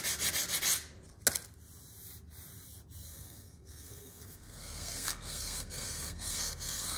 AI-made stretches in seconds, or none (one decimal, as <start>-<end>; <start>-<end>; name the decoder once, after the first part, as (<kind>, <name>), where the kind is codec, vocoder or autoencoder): 3.1-7.0 (codec, SNAC)

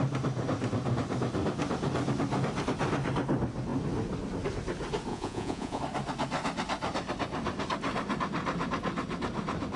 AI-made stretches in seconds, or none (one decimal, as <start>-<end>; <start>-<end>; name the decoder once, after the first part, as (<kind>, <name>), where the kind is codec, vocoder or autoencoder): 5.1-5.8 (vocoder, Vocos)

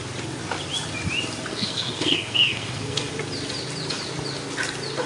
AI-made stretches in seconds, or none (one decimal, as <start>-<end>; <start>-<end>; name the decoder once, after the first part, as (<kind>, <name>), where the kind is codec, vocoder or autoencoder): 1.5-3.1 (codec, SNAC)